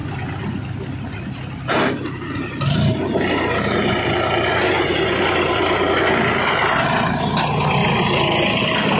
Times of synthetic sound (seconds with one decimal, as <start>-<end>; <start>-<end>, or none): 4.5-5.2